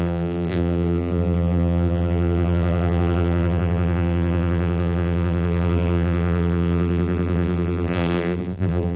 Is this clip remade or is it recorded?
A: remade